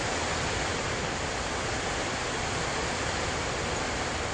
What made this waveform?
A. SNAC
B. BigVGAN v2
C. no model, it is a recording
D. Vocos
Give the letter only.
C